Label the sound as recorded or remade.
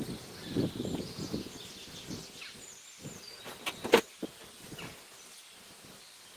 recorded